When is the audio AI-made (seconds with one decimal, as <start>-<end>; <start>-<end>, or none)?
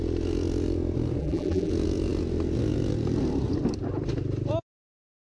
1.2-1.7